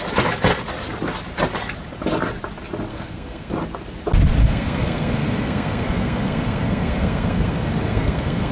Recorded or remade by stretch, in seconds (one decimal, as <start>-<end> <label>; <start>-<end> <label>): 0.0-2.9 recorded; 2.9-3.5 remade; 3.5-4.4 recorded; 4.4-8.5 remade